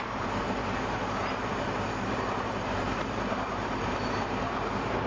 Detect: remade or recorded remade